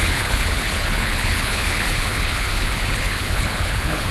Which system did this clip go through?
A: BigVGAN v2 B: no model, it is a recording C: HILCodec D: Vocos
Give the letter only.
C